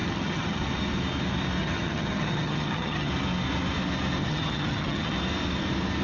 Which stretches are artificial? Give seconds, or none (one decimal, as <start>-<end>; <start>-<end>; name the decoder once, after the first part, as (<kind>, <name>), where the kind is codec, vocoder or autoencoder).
0.0-0.6 (vocoder, HiFi-GAN); 1.6-3.1; 4.2-5.2